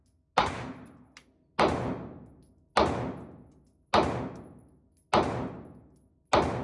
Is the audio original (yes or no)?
yes